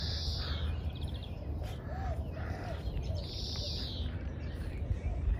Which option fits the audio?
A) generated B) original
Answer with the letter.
A